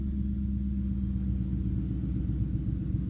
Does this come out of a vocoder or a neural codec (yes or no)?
no